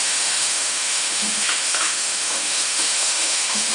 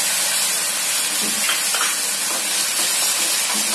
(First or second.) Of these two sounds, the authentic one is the second